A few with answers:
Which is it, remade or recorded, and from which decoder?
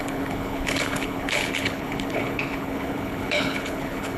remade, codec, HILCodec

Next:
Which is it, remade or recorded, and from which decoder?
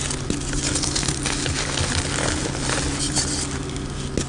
recorded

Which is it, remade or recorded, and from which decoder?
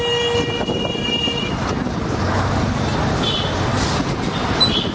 recorded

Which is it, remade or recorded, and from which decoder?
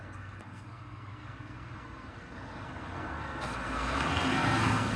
remade, codec, SNAC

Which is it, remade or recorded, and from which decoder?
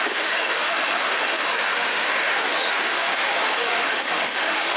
remade, autoencoder, DAC-VAE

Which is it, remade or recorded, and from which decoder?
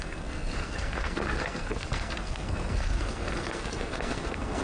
remade, codec, SNAC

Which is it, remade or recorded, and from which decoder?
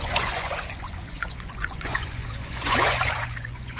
remade, vocoder, Vocos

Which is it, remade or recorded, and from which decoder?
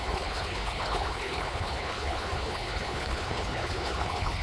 remade, codec, HILCodec